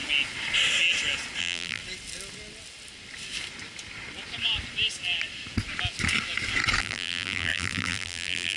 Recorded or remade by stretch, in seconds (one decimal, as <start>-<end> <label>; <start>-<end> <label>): 0.0-1.4 recorded; 1.4-1.8 remade; 1.8-6.8 recorded; 6.8-8.6 remade